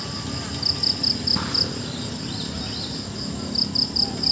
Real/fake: real